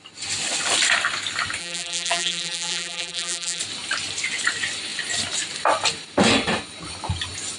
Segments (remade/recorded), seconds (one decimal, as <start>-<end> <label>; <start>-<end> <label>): 0.0-1.6 recorded; 1.6-3.6 remade; 3.6-7.6 recorded